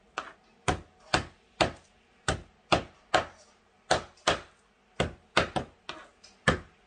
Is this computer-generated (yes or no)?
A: no